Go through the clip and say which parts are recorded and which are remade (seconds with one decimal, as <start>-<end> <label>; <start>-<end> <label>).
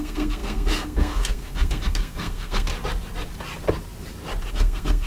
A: 0.0-2.7 remade; 2.7-4.5 recorded; 4.5-5.1 remade